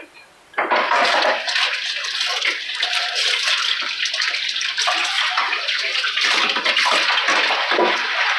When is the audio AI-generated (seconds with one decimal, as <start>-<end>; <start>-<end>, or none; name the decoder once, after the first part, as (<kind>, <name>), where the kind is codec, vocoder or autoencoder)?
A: 2.3-3.5 (vocoder, BigVGAN v2); 5.0-6.4